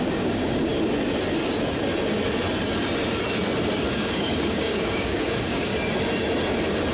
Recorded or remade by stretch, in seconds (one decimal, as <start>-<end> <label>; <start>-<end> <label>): 0.0-0.7 remade; 0.7-3.9 recorded; 3.9-5.7 remade; 5.7-6.9 recorded